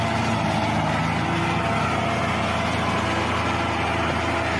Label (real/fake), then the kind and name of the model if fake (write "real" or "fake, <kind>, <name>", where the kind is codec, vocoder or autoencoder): real